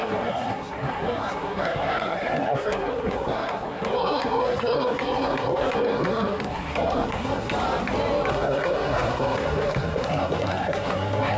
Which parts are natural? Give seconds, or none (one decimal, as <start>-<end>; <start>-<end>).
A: 7.5-8.3